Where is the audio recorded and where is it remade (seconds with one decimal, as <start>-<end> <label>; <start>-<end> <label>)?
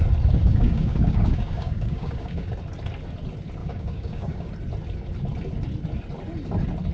0.0-0.4 recorded; 0.4-2.5 remade; 2.5-3.6 recorded; 3.6-4.5 remade; 4.5-6.9 recorded